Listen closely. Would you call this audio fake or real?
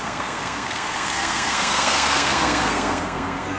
fake